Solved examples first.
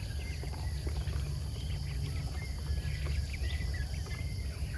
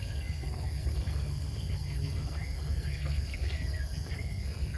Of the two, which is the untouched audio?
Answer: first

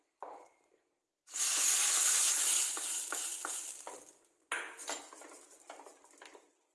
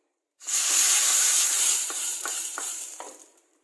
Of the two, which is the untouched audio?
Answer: first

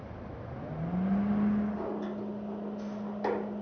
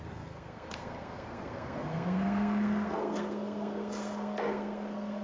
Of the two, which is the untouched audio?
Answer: first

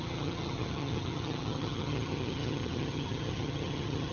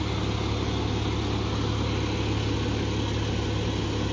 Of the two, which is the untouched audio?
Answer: second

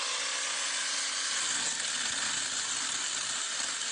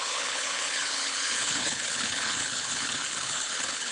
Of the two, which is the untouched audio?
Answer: first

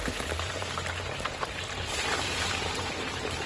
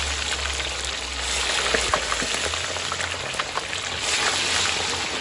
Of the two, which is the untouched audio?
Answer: second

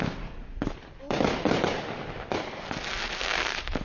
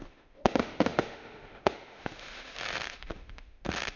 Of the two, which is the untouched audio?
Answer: first